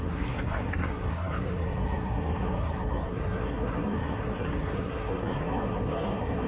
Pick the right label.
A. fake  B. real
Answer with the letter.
A